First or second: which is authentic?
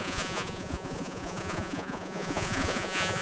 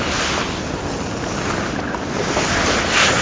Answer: second